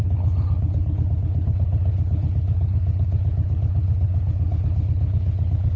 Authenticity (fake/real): fake